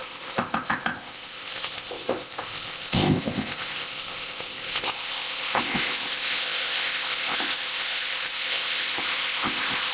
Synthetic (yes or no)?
yes